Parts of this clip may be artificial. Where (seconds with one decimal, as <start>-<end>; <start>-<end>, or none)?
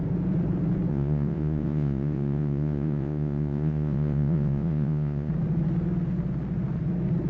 0.9-5.3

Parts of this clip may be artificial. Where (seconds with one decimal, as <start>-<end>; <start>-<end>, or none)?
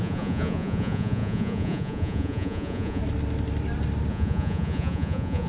0.0-3.0; 4.1-5.5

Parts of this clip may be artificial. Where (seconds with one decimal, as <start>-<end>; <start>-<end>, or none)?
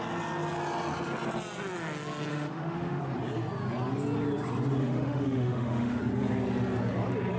2.3-3.0; 4.8-6.0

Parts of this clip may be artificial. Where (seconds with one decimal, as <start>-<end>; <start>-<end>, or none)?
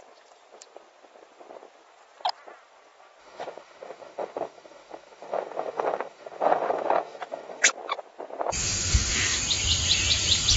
3.2-7.7; 8.6-9.4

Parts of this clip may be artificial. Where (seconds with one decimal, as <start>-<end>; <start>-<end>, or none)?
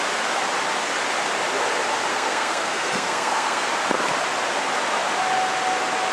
2.1-3.7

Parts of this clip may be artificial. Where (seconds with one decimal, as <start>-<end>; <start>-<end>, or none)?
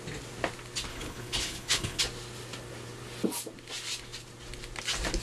0.9-2.0